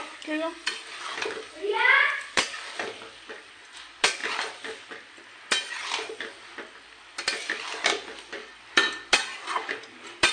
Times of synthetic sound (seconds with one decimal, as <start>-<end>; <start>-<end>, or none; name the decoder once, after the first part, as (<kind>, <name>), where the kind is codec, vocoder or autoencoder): 0.0-10.3 (vocoder, BigVGAN v2)

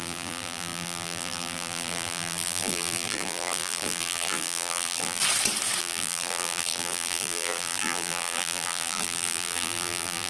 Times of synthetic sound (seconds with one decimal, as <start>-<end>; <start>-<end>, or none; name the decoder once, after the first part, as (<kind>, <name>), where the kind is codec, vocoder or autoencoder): 0.0-5.2 (vocoder, BigVGAN v2); 5.8-10.3

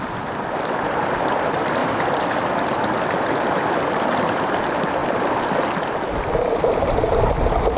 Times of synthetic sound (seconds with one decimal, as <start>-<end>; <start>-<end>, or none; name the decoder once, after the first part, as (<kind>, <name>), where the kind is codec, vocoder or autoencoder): 1.8-2.5 (vocoder, BigVGAN v2); 5.0-6.3